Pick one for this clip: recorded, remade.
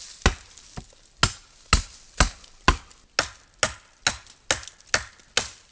recorded